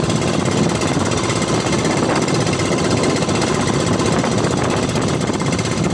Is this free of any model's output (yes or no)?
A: yes